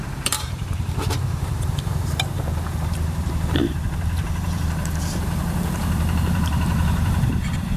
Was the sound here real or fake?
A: fake